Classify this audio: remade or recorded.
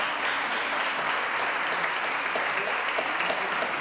recorded